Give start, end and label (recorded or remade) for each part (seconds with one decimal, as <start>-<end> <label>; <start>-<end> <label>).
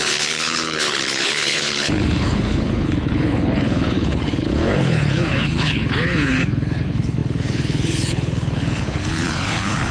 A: 0.0-9.9 remade